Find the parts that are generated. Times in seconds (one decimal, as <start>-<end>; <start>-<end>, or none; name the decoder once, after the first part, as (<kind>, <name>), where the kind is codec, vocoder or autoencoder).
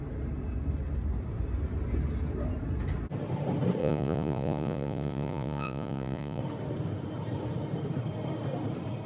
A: 3.8-6.4 (vocoder, Vocos)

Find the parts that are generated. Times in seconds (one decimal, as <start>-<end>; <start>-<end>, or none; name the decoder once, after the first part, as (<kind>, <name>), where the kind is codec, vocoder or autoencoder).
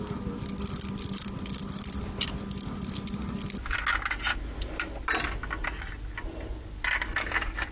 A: none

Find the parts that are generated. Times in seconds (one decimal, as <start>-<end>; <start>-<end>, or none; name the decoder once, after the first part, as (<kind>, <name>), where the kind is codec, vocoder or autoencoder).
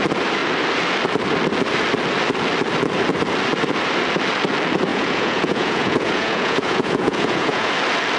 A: 4.9-7.7 (vocoder, Vocos)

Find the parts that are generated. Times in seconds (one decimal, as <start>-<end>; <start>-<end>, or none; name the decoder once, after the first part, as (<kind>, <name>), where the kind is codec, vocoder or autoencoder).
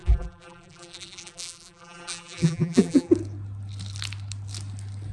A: 0.0-3.1 (vocoder, BigVGAN v2)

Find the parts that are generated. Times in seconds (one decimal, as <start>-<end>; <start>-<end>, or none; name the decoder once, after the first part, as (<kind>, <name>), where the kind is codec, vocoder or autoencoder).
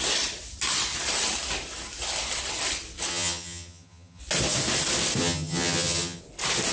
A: 3.1-4.2 (vocoder, HiFi-GAN); 5.2-6.2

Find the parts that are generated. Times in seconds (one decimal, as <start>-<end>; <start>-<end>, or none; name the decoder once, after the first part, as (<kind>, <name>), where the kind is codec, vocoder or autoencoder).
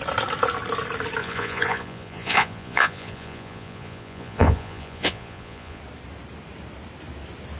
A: 1.2-5.8 (vocoder, Vocos)